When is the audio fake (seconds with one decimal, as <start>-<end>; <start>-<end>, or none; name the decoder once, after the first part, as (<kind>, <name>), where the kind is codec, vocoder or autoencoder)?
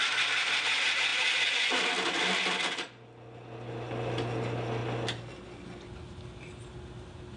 none